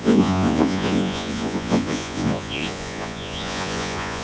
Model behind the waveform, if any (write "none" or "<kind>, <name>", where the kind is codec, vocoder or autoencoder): vocoder, Vocos